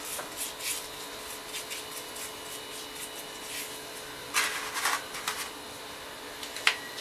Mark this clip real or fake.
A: real